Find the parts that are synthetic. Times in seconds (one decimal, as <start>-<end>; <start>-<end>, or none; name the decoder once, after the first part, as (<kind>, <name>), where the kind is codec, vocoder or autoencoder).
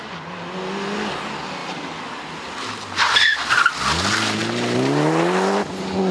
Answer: none